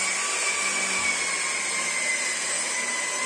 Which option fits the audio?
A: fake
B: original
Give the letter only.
B